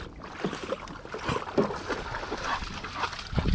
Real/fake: real